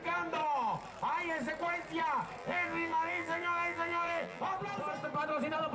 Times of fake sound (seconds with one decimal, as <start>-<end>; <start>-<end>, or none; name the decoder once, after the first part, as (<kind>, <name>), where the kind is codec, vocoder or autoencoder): 2.4-4.4 (vocoder, BigVGAN v2)